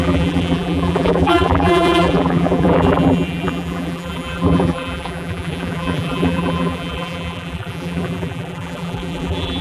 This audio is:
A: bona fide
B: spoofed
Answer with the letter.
B